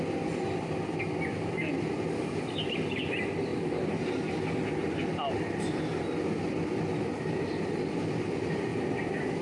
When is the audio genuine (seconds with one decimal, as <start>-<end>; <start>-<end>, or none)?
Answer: 0.0-9.4

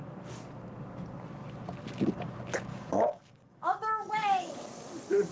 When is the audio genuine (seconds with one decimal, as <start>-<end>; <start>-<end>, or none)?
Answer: 0.0-2.7; 4.5-5.3

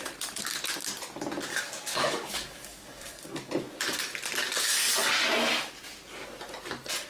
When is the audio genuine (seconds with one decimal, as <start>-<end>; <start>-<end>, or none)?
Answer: 0.0-1.5; 3.5-7.1

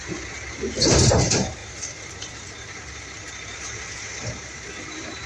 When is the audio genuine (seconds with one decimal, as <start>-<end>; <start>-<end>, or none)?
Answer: none

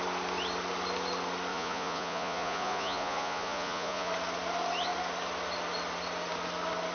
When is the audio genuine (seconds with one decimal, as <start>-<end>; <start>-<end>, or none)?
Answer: 0.0-1.5; 4.1-6.9

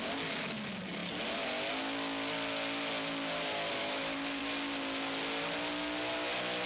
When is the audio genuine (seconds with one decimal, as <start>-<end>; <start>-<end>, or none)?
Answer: 0.0-3.8; 4.4-6.7